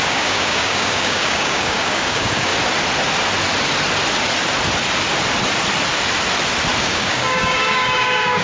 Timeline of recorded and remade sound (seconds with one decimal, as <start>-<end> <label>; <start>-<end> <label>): 0.0-2.5 remade; 2.5-6.8 recorded; 6.8-8.4 remade